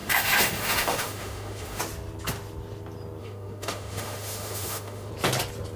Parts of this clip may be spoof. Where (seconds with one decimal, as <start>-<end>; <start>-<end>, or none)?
0.0-1.8; 3.2-5.1